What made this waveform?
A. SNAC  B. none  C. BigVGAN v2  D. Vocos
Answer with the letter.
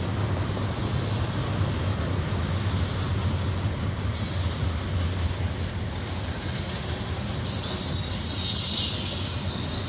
B